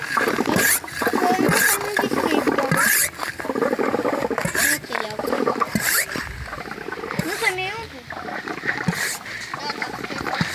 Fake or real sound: real